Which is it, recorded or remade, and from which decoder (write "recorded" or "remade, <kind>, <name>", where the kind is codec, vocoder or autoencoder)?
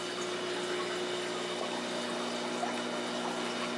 recorded